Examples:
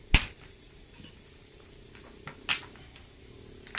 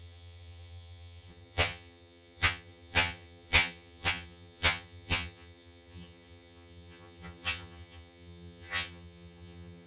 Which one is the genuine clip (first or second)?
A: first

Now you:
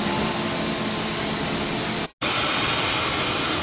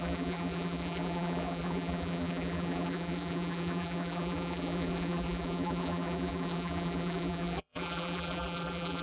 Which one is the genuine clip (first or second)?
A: first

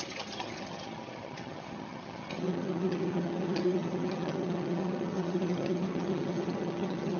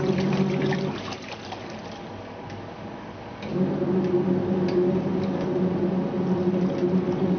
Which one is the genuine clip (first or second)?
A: second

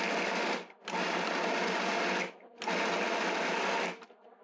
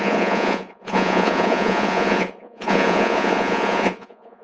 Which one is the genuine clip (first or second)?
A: first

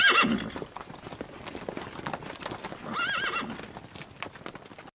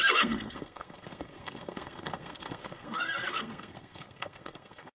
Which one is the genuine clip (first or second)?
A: first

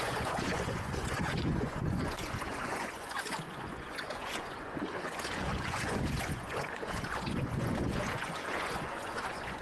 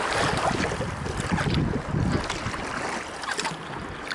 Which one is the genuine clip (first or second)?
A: second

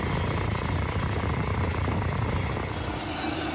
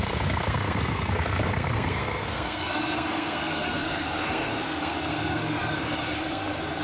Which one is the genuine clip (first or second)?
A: first